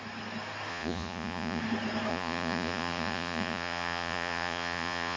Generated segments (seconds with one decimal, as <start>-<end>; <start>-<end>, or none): 0.7-1.6; 2.1-5.2